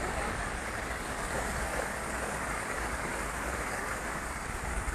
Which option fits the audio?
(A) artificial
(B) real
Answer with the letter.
A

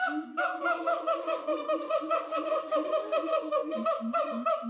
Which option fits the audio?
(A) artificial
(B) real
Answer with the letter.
A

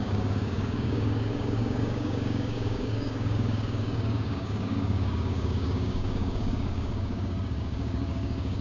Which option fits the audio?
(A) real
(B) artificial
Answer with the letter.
B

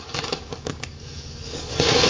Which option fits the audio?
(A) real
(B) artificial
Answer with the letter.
B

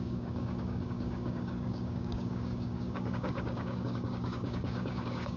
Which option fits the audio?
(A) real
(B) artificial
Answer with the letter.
B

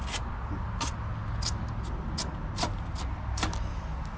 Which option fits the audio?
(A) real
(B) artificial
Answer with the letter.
A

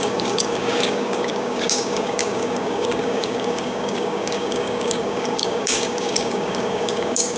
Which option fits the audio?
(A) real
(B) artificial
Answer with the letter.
B